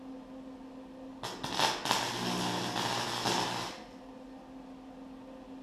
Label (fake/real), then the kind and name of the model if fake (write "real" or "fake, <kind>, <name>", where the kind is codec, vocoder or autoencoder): real